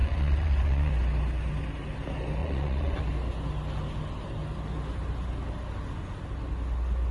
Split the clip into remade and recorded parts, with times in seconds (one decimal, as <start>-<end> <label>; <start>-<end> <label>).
0.0-0.9 remade; 0.9-2.4 recorded; 2.4-3.0 remade; 3.0-7.1 recorded